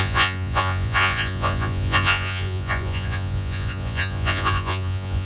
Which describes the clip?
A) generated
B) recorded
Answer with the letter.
A